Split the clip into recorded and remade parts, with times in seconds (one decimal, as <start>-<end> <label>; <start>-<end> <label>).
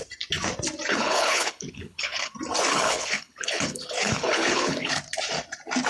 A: 0.0-0.9 recorded; 0.9-2.3 remade; 2.3-2.7 recorded; 2.7-5.0 remade; 5.0-5.9 recorded